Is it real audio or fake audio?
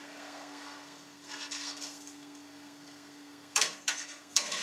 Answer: fake